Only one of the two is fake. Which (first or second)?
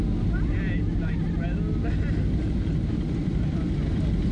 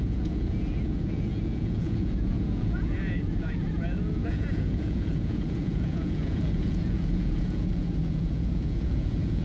second